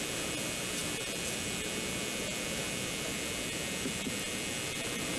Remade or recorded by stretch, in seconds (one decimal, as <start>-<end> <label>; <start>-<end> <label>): 0.0-5.2 recorded